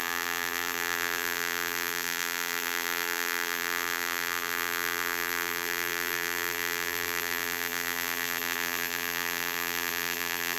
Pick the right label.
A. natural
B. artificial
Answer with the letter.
B